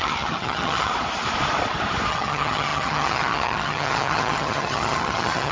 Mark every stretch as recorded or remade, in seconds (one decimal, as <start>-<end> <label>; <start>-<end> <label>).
0.0-0.9 remade; 0.9-2.1 recorded; 2.1-5.5 remade